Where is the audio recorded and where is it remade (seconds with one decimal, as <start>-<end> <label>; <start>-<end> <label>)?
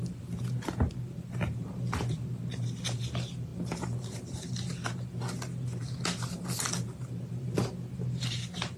0.0-8.8 recorded